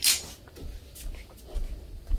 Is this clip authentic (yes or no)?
yes